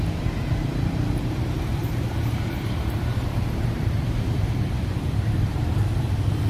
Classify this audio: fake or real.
fake